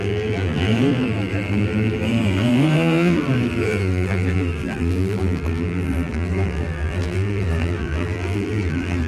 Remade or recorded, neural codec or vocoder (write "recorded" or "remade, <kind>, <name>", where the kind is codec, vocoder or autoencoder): remade, vocoder, BigVGAN v2